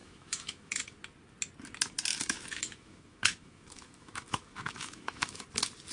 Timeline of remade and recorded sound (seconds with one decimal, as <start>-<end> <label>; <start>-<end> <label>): 0.0-0.8 remade; 0.8-2.1 recorded; 2.1-5.4 remade; 5.4-5.9 recorded